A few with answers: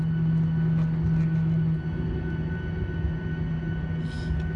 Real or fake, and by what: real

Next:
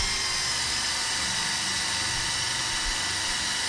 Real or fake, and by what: real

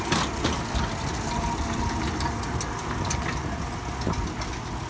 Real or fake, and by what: real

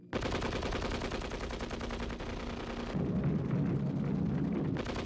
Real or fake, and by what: real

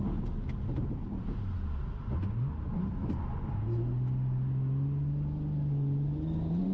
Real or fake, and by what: real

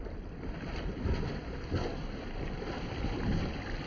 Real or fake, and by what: fake, vocoder, BigVGAN v2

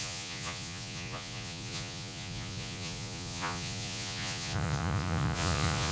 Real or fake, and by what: fake, vocoder, Vocos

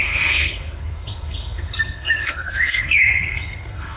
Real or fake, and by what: fake, codec, SNAC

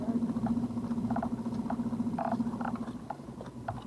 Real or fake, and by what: real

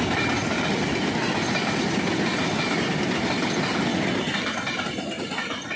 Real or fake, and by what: real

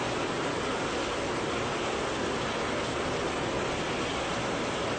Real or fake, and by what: real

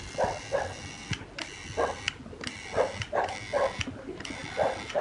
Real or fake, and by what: real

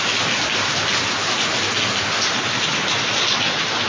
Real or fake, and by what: real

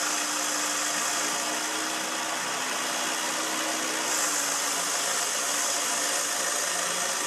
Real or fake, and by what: real